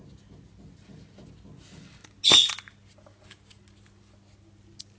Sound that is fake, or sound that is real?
real